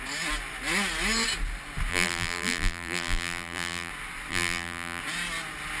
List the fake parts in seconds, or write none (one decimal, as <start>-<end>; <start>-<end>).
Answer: 1.9-3.9; 4.3-5.0